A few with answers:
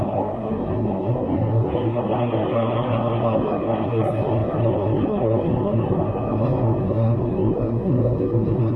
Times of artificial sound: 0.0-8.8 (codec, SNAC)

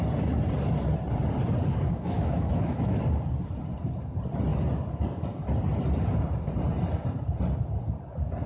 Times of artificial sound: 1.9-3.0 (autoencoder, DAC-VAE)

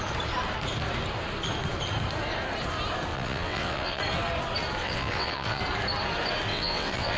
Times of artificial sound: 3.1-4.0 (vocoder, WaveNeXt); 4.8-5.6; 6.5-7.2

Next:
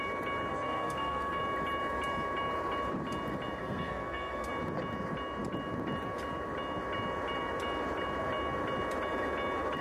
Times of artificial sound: 0.5-1.4 (codec, SNAC); 3.6-4.5

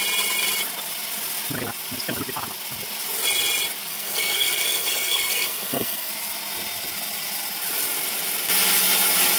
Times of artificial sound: 3.9-6.1 (codec, SNAC)

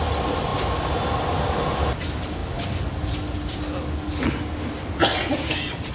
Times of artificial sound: none

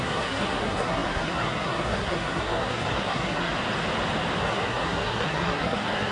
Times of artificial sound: 0.0-3.5 (codec, SNAC); 4.4-6.1